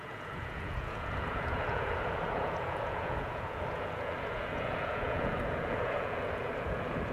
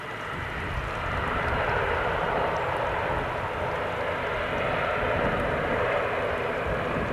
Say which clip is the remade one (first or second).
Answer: first